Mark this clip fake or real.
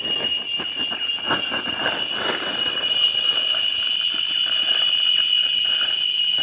real